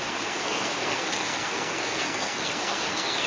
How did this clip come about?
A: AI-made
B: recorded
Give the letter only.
A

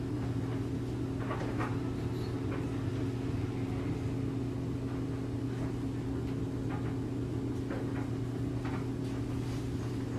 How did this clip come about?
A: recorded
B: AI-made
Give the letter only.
A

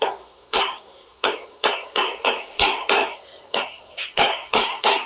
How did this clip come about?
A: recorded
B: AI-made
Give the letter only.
B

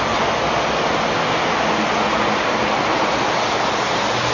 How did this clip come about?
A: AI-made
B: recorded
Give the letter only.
B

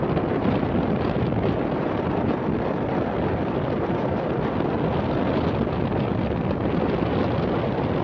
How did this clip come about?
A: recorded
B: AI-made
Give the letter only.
A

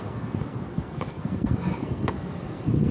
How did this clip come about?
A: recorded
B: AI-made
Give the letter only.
B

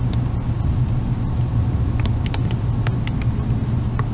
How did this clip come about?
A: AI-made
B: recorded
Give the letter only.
B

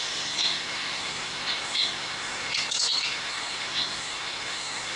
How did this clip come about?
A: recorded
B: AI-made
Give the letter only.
B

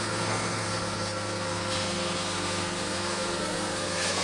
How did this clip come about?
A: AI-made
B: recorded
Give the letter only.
A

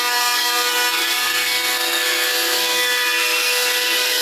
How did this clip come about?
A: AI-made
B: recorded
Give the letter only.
A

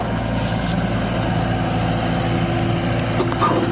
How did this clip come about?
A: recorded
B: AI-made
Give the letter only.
A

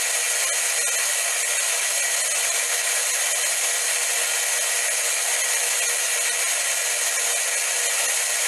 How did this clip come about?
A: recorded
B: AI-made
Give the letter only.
A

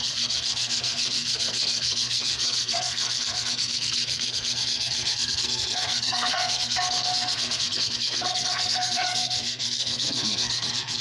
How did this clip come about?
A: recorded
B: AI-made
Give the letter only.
B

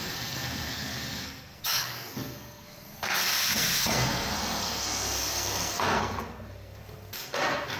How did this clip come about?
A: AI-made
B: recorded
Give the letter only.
A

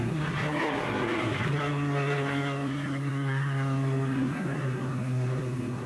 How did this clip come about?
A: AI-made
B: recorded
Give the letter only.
A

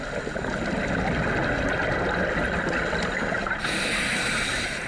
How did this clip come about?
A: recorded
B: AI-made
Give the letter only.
A